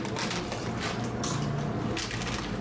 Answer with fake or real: real